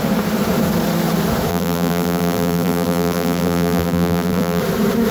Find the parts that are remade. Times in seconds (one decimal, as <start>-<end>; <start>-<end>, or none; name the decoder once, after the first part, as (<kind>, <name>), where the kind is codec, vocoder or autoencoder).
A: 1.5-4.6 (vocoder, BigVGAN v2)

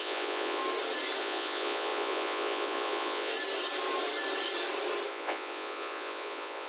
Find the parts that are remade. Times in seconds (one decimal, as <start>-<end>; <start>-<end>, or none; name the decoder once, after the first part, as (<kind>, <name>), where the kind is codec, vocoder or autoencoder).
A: 0.0-0.6 (vocoder, Vocos); 1.2-3.3; 5.1-6.7

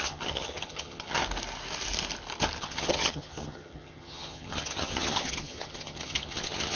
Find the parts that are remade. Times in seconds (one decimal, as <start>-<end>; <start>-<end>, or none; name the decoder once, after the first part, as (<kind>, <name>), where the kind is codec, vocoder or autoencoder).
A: 0.0-1.2 (vocoder, HiFi-GAN); 2.6-6.8

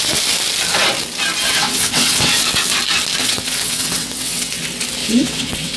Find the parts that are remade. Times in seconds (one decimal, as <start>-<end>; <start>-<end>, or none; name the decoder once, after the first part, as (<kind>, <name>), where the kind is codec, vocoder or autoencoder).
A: 1.4-2.4 (vocoder, WaveNeXt); 3.2-4.6; 5.0-5.8